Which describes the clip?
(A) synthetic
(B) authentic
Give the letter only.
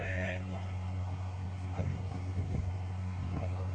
A